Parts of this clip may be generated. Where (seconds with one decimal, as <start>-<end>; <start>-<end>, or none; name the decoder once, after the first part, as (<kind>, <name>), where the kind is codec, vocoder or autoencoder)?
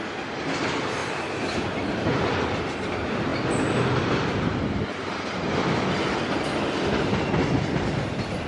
none